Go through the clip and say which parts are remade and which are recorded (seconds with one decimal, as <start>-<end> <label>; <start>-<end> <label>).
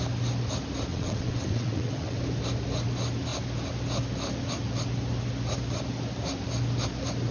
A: 0.0-0.9 recorded; 0.9-2.2 remade; 2.2-7.3 recorded